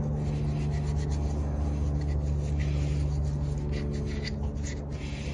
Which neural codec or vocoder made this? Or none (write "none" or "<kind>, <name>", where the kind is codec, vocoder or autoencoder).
none